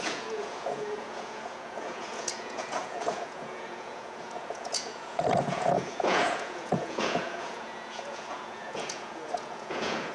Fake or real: fake